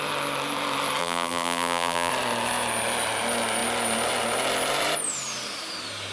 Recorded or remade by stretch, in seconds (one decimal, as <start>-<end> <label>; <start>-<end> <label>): 0.0-1.0 recorded; 1.0-2.1 remade; 2.1-6.1 recorded